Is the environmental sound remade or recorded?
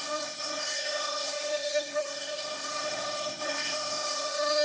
remade